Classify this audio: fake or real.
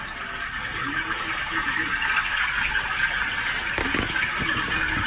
real